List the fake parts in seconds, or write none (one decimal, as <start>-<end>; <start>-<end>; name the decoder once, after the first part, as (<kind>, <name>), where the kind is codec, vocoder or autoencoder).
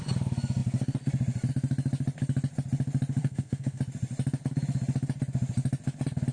3.2-3.8 (codec, SNAC)